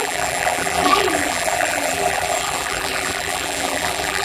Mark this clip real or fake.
fake